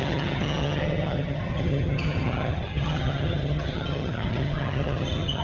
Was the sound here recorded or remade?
remade